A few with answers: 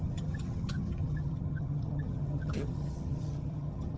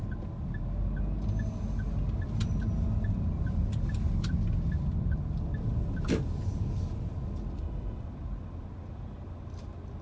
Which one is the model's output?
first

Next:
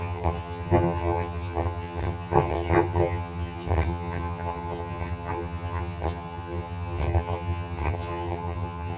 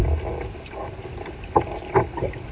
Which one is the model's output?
first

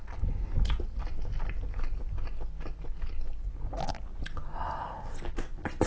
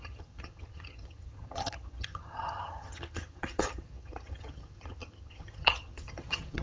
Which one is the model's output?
second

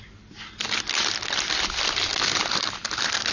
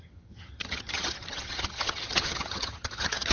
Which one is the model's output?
second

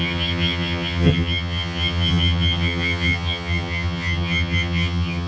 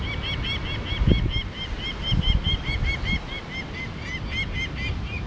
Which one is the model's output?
first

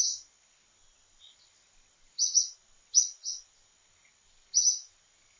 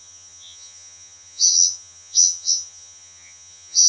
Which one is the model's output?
second